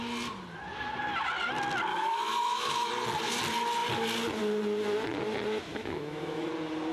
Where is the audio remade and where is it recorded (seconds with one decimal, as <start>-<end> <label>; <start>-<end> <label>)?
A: 0.0-1.9 recorded; 1.9-2.9 remade; 2.9-5.7 recorded; 5.7-6.5 remade; 6.5-6.9 recorded